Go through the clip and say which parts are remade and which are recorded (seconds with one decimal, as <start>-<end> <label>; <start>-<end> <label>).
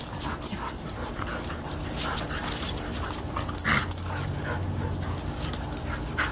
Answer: 0.0-6.3 recorded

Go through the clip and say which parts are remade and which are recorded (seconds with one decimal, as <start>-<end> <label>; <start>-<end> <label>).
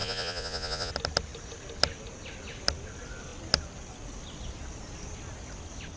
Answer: 0.0-0.9 remade; 0.9-6.0 recorded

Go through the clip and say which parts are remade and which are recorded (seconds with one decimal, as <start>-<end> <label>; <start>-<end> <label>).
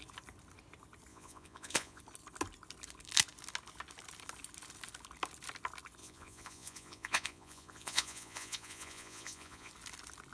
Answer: 0.0-1.1 recorded; 1.1-2.0 remade; 2.0-6.0 recorded; 6.0-9.7 remade; 9.7-10.3 recorded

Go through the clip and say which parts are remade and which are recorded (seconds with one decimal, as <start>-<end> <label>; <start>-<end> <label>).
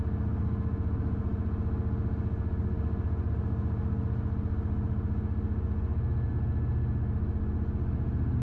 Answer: 0.0-8.4 recorded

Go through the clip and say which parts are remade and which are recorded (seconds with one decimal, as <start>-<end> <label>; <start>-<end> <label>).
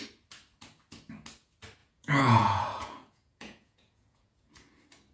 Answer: 0.0-1.8 recorded; 1.8-4.5 remade; 4.5-5.1 recorded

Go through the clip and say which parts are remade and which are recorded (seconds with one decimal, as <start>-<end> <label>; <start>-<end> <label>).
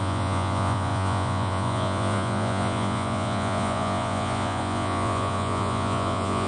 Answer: 0.0-6.5 remade